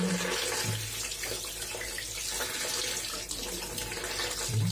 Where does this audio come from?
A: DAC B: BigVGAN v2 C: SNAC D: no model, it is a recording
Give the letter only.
D